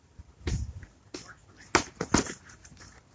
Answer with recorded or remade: recorded